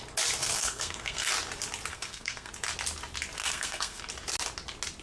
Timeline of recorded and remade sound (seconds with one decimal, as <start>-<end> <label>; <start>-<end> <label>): 0.0-0.4 recorded; 0.4-1.3 remade; 1.3-1.9 recorded; 1.9-2.5 remade; 2.5-3.4 recorded; 3.4-4.0 remade; 4.0-5.0 recorded